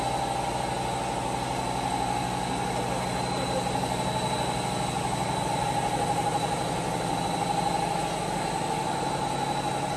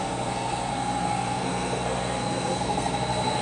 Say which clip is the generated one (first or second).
second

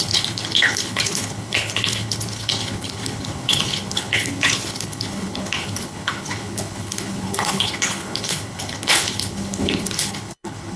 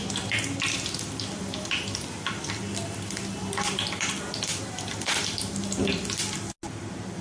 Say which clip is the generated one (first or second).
first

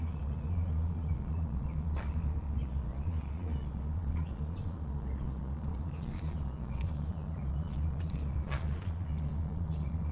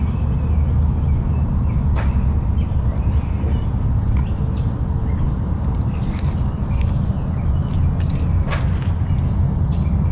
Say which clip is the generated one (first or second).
first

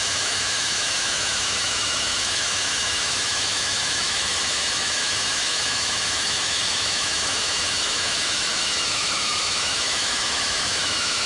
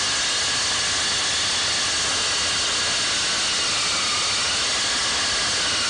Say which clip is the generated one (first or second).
first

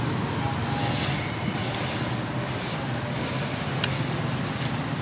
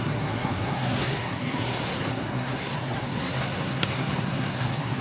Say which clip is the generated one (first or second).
second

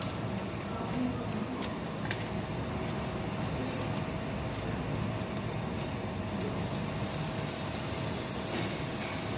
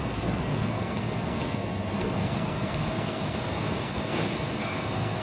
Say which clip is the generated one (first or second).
second